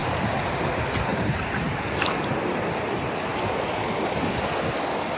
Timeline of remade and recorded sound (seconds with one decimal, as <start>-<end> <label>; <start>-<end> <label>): 0.0-0.6 remade; 0.6-1.1 recorded; 1.1-2.0 remade; 2.0-3.3 recorded; 3.3-4.3 remade; 4.3-5.2 recorded